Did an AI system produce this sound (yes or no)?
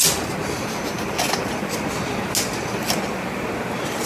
no